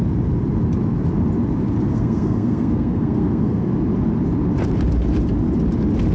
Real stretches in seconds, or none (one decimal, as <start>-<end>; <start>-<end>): 0.0-1.9; 3.7-6.1